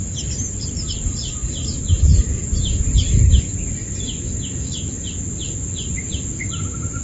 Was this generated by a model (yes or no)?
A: no